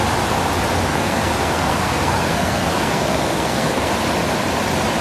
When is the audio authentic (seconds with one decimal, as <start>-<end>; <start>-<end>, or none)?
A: 0.0-0.9; 3.9-5.0